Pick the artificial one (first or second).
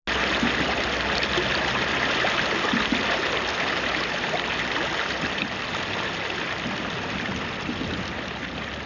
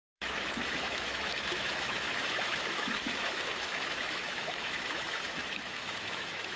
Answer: second